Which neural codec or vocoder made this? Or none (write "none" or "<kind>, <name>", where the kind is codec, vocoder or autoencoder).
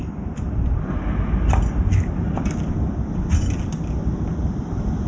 none